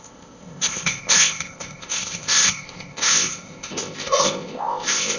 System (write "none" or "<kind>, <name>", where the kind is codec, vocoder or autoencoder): codec, ZipCodec